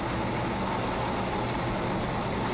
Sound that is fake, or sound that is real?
real